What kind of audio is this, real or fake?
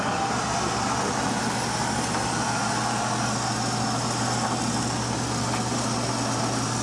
real